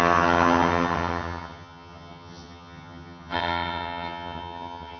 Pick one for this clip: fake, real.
fake